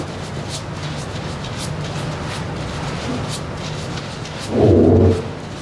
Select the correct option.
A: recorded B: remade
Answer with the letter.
A